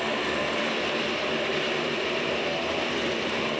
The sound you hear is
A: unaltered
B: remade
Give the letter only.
A